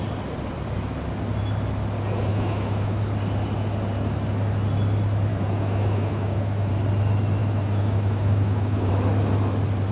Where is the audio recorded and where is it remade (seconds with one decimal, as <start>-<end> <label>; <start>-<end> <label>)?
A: 0.0-2.3 recorded; 2.3-3.0 remade; 3.0-5.3 recorded; 5.3-6.7 remade; 6.7-7.4 recorded; 7.4-8.9 remade; 8.9-9.9 recorded